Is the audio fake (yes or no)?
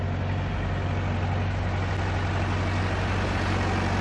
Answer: no